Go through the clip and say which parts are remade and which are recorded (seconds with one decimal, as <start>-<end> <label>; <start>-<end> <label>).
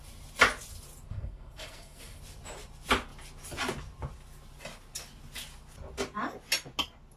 0.0-1.1 recorded; 1.1-2.2 remade; 2.2-7.2 recorded